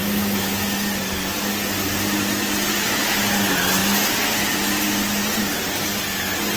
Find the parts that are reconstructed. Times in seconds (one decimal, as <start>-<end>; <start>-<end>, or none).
none